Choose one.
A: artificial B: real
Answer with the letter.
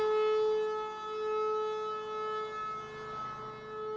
B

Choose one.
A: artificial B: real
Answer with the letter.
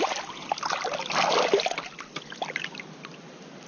B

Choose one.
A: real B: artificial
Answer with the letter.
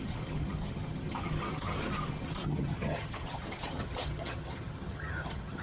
B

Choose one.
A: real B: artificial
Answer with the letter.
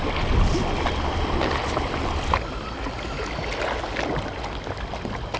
A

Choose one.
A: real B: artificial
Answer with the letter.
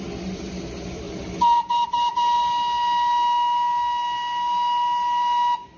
A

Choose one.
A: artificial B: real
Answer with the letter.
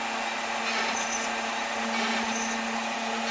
B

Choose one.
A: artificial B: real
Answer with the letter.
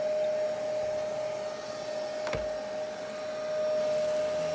B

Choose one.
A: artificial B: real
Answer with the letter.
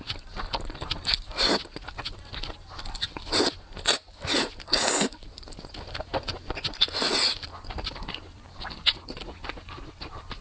B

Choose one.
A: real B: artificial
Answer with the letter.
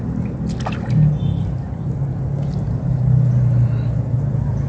A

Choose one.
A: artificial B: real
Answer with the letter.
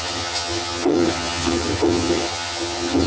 A